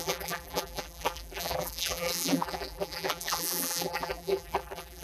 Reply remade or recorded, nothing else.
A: remade